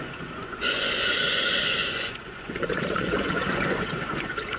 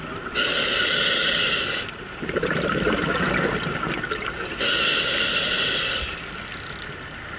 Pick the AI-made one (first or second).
first